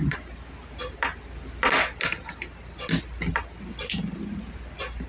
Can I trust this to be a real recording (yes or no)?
yes